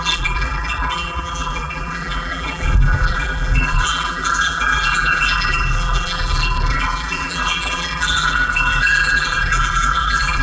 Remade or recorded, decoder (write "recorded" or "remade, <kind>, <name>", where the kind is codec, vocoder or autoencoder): remade, vocoder, BigVGAN v2